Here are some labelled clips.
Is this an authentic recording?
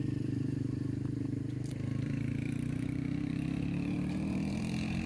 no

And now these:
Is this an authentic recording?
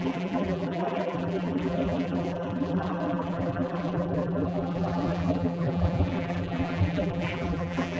no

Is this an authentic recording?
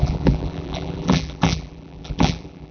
no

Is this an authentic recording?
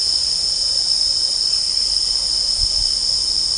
yes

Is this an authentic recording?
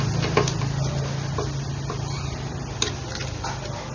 yes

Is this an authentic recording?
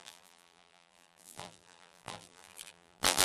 no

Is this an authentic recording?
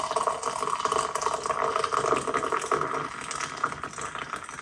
yes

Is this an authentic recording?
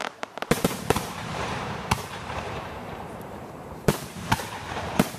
no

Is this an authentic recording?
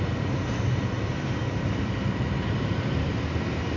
no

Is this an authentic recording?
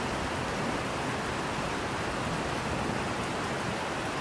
yes